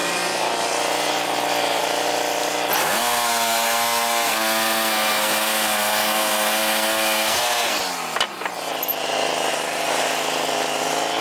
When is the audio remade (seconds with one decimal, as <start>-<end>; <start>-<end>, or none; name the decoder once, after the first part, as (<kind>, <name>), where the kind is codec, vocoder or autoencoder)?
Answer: 2.8-7.8 (codec, SNAC)